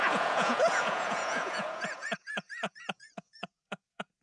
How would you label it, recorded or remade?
remade